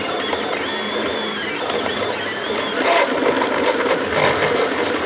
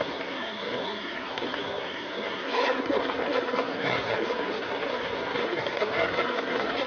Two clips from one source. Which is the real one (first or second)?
first